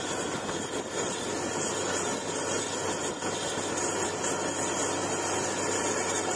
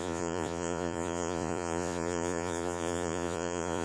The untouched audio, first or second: first